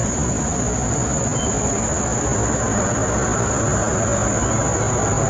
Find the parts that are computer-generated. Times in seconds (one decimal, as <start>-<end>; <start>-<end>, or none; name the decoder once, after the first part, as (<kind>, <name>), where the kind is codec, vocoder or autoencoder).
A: none